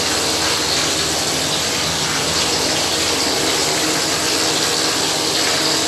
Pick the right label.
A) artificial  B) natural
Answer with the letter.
B